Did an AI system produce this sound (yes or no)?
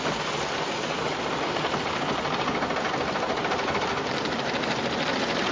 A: no